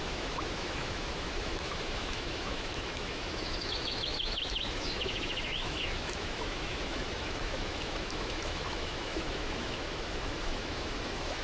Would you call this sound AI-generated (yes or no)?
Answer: yes